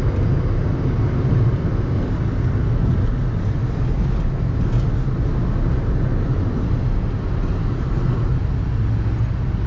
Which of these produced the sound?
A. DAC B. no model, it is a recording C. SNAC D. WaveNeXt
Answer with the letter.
B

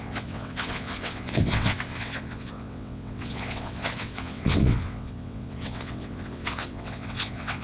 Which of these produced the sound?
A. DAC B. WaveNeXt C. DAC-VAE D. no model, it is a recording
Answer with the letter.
B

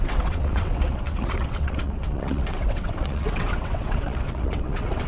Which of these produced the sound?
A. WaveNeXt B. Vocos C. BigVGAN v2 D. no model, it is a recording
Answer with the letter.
A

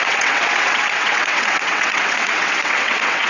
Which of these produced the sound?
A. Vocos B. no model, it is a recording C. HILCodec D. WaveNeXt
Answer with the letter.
D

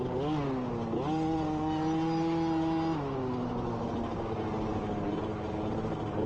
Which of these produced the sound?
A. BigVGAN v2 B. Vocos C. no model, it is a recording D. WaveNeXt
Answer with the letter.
C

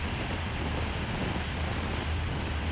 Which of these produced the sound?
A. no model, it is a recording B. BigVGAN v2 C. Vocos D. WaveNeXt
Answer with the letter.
A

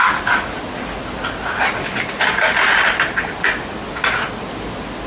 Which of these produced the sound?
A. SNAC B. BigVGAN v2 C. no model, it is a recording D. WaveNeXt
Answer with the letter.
C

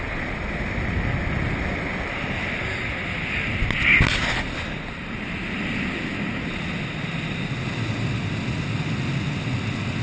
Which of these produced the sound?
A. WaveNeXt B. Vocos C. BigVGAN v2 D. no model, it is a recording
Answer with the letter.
D